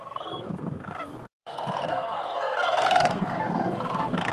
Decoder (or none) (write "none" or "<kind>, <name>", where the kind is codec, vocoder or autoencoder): codec, SNAC